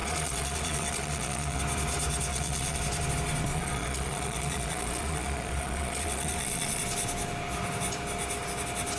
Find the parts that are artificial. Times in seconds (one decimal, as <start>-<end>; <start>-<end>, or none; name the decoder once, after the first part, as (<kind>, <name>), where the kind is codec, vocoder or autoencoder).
0.0-1.6 (vocoder, Vocos); 2.3-2.8; 3.5-6.8